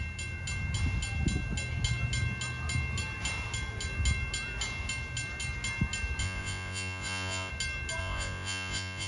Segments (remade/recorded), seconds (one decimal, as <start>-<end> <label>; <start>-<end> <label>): 0.0-6.2 recorded; 6.2-7.5 remade; 7.5-8.0 recorded; 8.0-9.1 remade